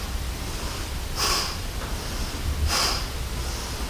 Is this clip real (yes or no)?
yes